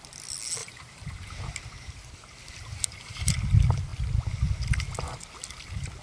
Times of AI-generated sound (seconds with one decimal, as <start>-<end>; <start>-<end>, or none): 0.6-1.5; 2.7-3.3